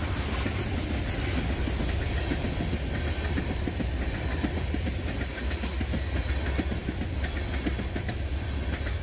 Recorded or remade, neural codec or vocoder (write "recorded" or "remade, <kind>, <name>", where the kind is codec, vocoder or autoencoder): recorded